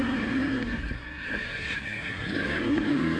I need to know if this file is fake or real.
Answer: fake